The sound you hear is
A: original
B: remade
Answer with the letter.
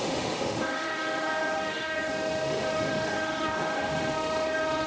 B